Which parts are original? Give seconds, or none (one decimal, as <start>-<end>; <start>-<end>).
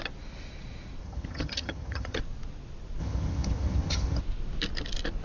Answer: 0.0-1.0; 2.2-3.0; 4.2-5.2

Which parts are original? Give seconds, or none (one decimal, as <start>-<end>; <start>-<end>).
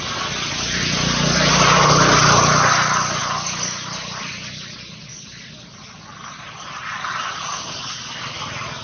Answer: 0.0-8.8